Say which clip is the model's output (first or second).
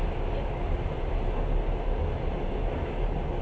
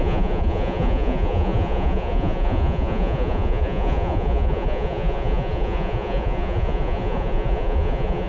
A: second